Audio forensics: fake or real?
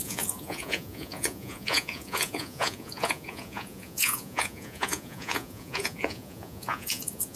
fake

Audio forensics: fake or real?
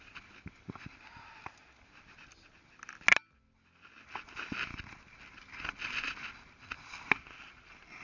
real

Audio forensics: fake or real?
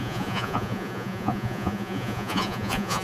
fake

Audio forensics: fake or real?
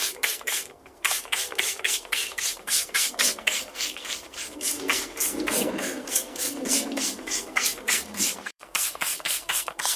fake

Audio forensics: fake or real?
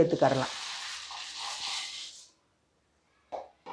real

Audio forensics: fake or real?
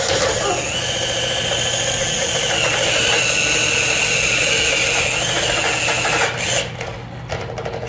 real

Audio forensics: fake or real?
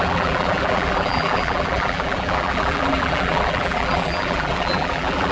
fake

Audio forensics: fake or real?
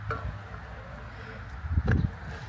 real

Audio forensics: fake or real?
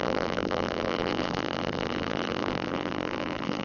fake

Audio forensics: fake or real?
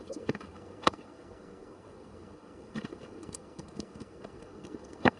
fake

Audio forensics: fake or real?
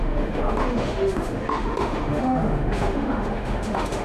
fake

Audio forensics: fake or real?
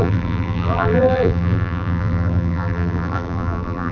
fake